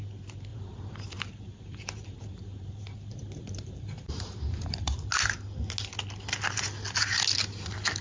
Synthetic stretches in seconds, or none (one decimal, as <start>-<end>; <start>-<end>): 0.5-5.1